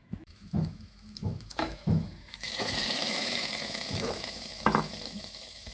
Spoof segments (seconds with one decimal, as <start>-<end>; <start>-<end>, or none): 0.0-5.7